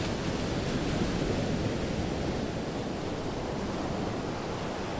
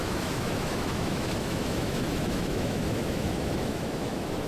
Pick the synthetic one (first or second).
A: second